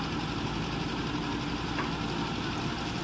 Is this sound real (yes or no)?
yes